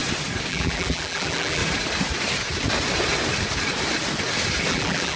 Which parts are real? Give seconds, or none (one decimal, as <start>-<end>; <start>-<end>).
0.0-0.5; 1.6-4.7